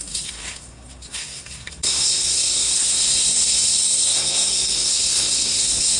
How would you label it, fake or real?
fake